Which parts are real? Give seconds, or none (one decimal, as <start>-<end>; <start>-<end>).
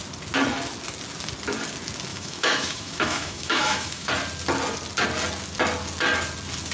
0.0-2.1; 4.1-6.7